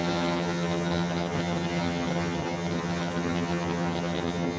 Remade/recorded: remade